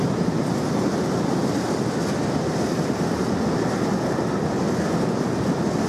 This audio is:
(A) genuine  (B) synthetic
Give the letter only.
A